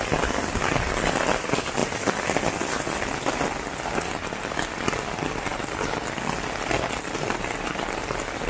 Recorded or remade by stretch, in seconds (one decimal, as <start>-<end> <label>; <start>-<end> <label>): 0.0-8.5 recorded